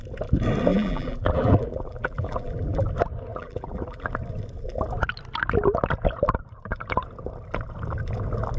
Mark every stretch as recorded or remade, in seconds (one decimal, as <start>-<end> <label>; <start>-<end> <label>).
0.0-0.7 recorded; 0.7-2.9 remade; 2.9-3.3 recorded; 3.3-4.1 remade; 4.1-8.6 recorded